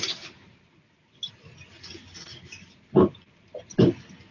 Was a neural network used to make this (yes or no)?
no